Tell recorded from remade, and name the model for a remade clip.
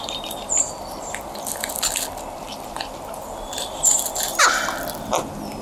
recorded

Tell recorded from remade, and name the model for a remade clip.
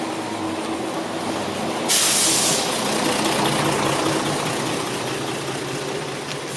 recorded